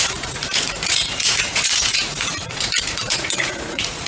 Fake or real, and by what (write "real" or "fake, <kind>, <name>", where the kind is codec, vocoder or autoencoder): fake, vocoder, Vocos